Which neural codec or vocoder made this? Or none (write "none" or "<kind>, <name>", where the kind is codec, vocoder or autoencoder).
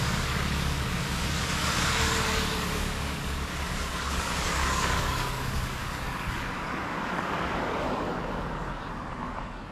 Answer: codec, DAC